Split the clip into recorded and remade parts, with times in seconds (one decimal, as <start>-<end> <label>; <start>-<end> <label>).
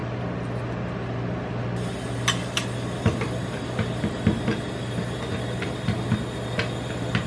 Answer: 0.0-7.3 recorded